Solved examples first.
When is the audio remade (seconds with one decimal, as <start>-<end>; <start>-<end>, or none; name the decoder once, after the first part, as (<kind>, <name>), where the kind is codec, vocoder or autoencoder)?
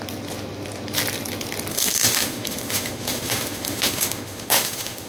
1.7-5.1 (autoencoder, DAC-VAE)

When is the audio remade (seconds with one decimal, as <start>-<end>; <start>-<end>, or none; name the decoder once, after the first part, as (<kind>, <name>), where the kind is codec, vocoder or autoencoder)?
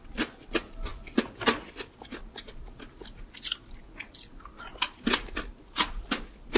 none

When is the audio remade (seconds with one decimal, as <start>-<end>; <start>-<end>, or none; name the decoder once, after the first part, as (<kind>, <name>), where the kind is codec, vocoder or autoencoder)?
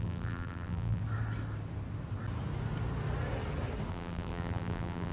0.0-1.0 (vocoder, BigVGAN v2); 3.9-5.1